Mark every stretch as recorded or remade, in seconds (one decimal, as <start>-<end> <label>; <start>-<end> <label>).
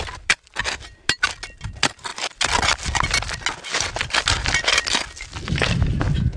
0.0-6.4 recorded